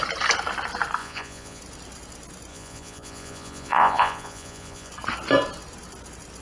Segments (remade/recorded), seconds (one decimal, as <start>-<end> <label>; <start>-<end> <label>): 0.0-1.0 recorded; 1.0-1.6 remade; 1.6-2.5 recorded; 2.5-4.9 remade; 4.9-6.4 recorded